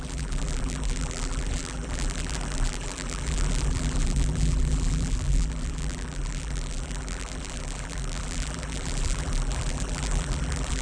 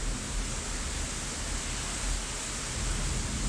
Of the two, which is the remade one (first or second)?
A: first